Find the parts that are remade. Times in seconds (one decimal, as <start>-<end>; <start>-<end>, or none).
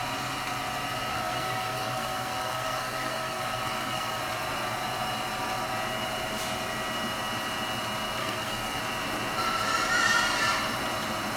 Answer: 1.1-4.2; 8.2-8.8